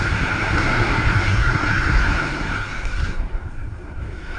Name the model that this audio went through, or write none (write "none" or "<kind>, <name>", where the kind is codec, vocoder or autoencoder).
codec, SNAC